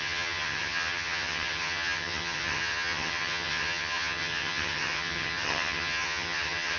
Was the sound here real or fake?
fake